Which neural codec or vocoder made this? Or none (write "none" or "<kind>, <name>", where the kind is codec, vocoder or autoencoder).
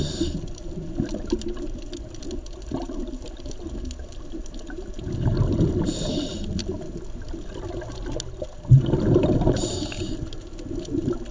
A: none